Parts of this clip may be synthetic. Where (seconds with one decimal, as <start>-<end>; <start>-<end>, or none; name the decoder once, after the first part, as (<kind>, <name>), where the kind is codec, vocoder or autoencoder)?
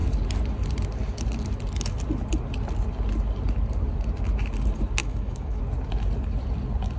5.0-5.6 (autoencoder, DAC-VAE)